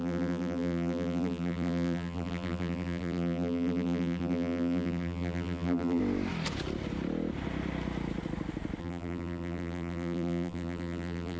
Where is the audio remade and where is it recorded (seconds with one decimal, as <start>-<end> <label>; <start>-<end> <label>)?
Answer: 0.0-6.0 remade; 6.0-8.8 recorded; 8.8-11.4 remade